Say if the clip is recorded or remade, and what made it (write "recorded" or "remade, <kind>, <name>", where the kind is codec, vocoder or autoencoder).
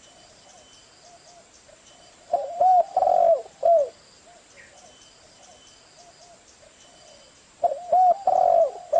recorded